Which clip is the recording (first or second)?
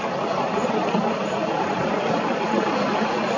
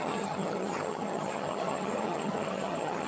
first